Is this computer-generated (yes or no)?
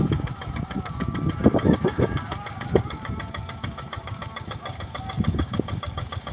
yes